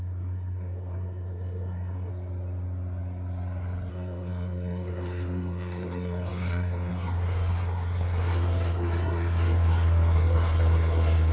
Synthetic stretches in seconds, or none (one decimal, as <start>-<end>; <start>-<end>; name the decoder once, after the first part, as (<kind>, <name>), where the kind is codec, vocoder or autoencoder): 0.0-2.1 (codec, SNAC); 3.9-11.3